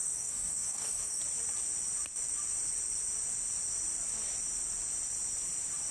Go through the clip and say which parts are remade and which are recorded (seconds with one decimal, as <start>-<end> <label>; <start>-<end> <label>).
0.0-1.2 remade; 1.2-5.9 recorded